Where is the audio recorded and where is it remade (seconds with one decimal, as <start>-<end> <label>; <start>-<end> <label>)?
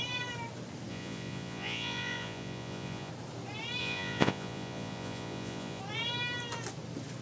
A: 0.0-0.9 recorded; 0.9-3.1 remade; 3.1-3.8 recorded; 3.8-5.8 remade; 5.8-7.2 recorded